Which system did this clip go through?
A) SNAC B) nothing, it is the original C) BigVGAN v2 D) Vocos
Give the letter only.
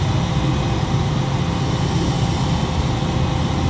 B